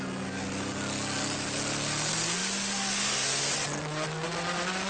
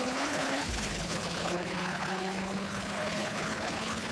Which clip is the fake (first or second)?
second